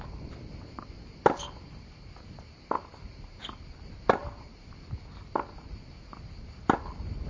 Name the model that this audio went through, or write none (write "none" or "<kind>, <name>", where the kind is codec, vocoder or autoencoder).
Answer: none